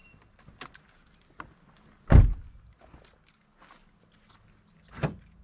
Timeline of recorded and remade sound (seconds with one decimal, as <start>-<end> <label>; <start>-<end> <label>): 0.0-5.4 recorded